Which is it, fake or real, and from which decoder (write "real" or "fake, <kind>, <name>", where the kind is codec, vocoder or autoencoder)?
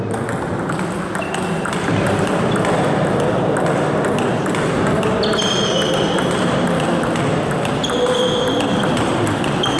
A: real